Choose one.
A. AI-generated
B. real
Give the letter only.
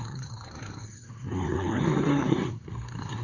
A